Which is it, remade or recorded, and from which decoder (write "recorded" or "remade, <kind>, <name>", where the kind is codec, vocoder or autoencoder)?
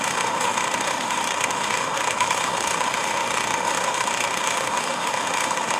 remade, autoencoder, DAC-VAE